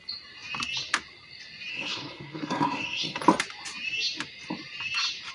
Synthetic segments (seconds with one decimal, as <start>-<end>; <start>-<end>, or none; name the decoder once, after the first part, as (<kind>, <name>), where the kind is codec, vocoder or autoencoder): 1.7-3.2 (codec, SNAC)